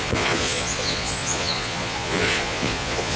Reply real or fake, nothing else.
fake